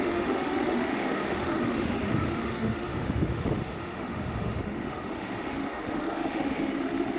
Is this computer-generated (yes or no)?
yes